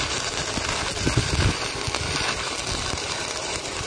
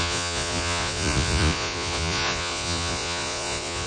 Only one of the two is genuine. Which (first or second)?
first